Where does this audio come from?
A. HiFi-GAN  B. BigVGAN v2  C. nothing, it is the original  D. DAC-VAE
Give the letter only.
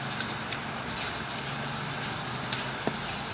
C